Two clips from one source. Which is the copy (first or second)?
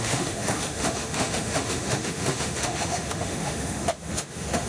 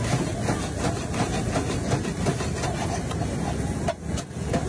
first